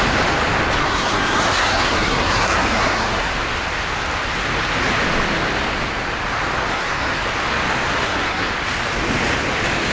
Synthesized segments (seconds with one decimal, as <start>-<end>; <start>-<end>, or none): 0.8-3.3; 6.7-7.2; 8.0-8.5